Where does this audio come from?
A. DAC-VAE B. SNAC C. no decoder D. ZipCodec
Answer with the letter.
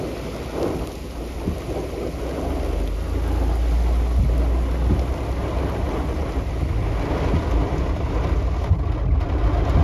C